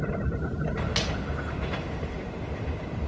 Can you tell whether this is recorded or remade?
recorded